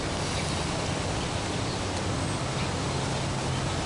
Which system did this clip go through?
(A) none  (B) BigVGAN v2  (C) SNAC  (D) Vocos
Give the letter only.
A